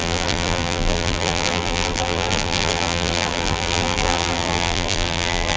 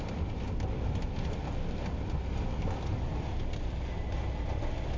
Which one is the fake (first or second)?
first